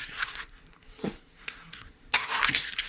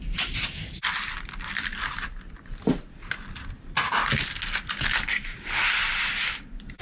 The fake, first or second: first